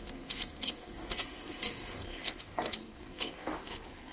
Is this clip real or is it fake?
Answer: fake